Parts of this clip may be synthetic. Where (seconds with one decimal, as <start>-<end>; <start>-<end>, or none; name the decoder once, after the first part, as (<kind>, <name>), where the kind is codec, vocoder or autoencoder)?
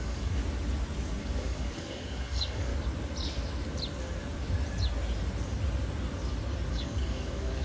0.0-0.4 (codec, DAC); 1.2-2.7; 6.7-7.6